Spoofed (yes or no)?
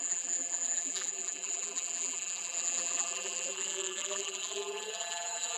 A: yes